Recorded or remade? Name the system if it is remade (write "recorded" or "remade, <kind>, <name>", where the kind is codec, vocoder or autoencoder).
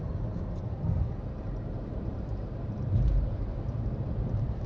remade, vocoder, BigVGAN v2